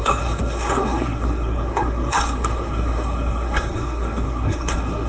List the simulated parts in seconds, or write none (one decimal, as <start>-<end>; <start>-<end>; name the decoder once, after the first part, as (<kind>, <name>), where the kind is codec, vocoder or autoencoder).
0.0-5.1 (codec, SNAC)